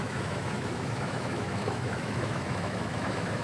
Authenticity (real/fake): fake